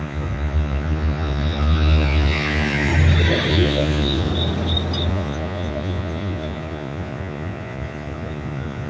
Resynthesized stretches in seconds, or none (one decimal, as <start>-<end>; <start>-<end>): 0.0-2.9; 3.5-4.3; 5.1-8.9